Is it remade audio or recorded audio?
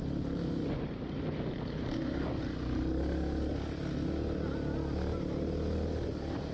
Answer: recorded